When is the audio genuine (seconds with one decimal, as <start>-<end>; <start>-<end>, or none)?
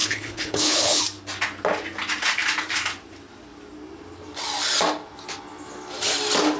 1.0-6.6